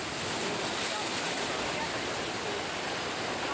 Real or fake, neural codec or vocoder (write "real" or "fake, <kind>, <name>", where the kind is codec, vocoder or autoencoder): real